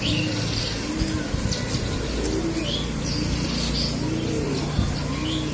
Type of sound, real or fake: real